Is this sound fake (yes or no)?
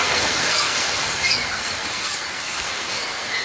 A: yes